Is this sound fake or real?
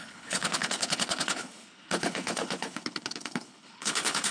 fake